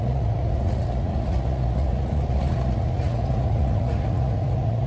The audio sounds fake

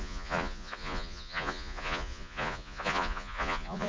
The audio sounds fake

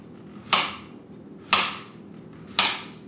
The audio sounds real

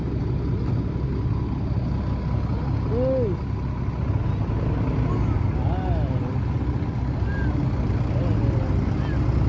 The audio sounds real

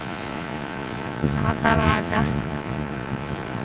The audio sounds fake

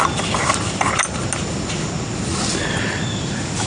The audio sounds real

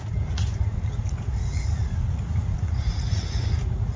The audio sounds fake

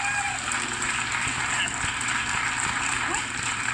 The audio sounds real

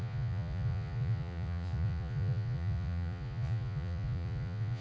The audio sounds fake